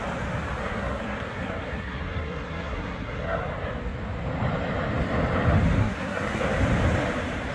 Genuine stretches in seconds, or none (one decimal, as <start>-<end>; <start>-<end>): 0.0-0.6; 3.5-5.8; 6.4-7.5